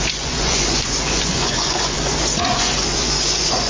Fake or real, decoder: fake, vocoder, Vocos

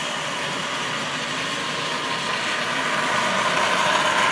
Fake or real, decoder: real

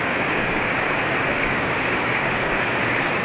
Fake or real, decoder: fake, codec, DAC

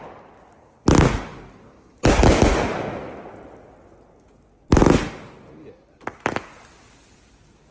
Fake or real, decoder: real